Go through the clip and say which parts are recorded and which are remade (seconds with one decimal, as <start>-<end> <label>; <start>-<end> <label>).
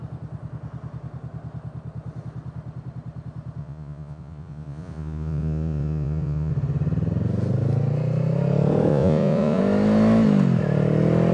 0.0-3.6 recorded; 3.6-6.5 remade; 6.5-8.9 recorded; 8.9-9.6 remade; 9.6-11.3 recorded